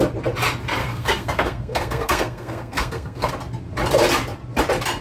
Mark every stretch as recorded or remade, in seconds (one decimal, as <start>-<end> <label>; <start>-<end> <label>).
0.0-0.8 recorded; 0.8-3.3 remade; 3.3-5.0 recorded